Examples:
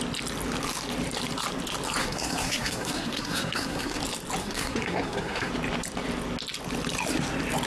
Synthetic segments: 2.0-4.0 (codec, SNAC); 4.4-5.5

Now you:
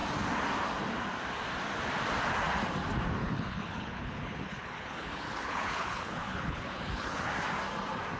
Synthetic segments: 3.2-7.3 (codec, HILCodec)

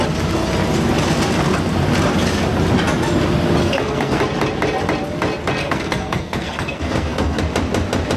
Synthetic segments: 3.6-4.2 (codec, SNAC); 5.6-7.4

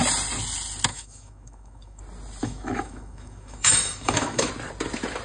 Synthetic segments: 0.9-2.0 (autoencoder, DAC-VAE); 2.4-4.5

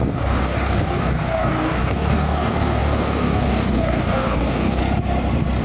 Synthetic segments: 0.0-4.8 (codec, DAC)

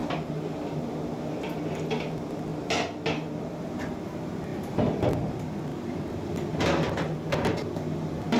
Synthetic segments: 0.0-1.0 (vocoder, BigVGAN v2); 4.5-5.2; 5.7-6.2

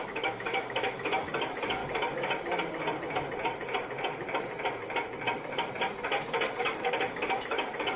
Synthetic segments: 0.0-1.8 (autoencoder, DAC-VAE); 6.6-8.0